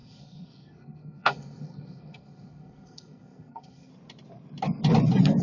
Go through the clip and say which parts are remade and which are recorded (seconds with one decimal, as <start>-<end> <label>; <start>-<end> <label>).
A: 0.0-3.9 remade; 3.9-5.4 recorded

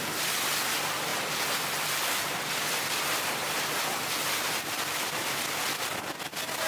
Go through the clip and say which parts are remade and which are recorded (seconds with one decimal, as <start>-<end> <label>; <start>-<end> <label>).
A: 0.0-6.7 recorded

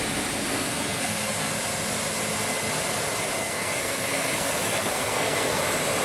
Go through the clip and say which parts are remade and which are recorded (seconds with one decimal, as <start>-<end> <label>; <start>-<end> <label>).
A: 0.0-0.4 recorded; 0.4-1.5 remade; 1.5-3.4 recorded; 3.4-5.6 remade; 5.6-6.0 recorded

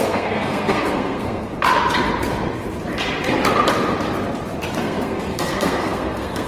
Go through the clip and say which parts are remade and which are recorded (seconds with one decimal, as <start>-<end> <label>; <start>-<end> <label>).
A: 0.0-1.5 remade; 1.5-4.8 recorded; 4.8-6.5 remade

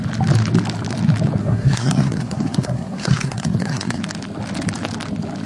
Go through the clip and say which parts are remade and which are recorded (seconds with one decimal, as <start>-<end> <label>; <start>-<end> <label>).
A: 0.0-1.4 recorded; 1.4-4.0 remade; 4.0-5.5 recorded

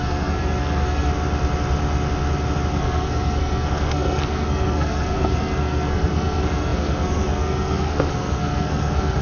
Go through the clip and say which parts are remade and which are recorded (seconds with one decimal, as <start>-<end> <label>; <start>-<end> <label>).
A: 0.0-1.1 remade; 1.1-2.7 recorded; 2.7-9.2 remade